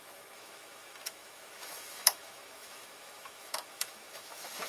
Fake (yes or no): yes